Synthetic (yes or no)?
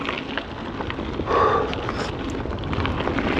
no